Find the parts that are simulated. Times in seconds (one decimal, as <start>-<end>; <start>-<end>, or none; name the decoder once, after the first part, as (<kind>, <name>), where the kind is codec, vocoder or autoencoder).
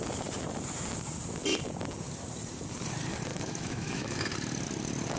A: 3.3-4.3 (autoencoder, DAC-VAE)